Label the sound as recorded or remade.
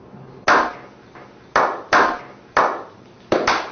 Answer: recorded